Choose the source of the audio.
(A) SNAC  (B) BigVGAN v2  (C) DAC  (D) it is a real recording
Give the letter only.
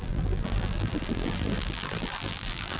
B